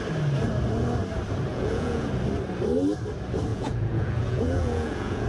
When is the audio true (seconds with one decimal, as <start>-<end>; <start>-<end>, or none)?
0.0-1.5; 2.1-3.5